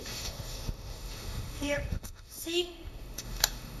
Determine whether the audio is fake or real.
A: fake